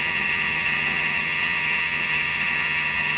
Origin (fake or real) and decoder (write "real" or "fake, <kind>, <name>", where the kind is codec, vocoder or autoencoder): fake, vocoder, HiFi-GAN